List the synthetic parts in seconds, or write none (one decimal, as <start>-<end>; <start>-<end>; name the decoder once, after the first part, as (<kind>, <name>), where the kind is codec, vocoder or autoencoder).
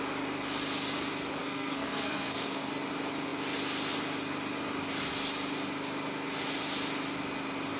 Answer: 1.4-2.7 (codec, SNAC)